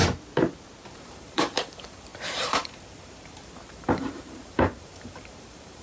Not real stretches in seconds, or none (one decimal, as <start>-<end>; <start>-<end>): 0.9-5.8